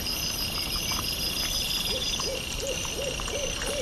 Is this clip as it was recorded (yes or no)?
no